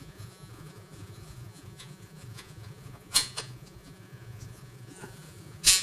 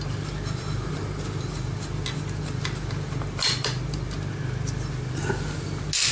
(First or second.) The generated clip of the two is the first